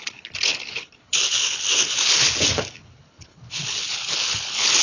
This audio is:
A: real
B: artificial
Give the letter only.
B